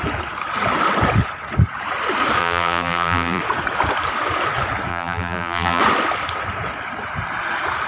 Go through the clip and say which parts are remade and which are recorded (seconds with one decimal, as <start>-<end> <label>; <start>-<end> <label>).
0.0-2.4 recorded; 2.4-3.4 remade; 3.4-4.9 recorded; 4.9-5.8 remade; 5.8-7.9 recorded